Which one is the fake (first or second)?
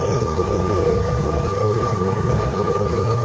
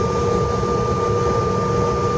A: first